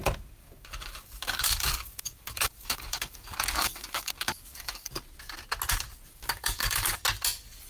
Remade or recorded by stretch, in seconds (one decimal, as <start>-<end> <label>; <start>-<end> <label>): 0.0-0.4 recorded; 0.4-4.9 remade; 4.9-6.1 recorded; 6.1-7.0 remade; 7.0-7.7 recorded